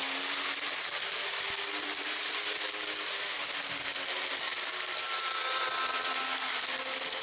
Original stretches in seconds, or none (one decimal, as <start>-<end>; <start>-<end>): 0.0-7.2